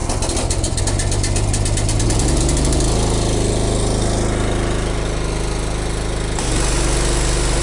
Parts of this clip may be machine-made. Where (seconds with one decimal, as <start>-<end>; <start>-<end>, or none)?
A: none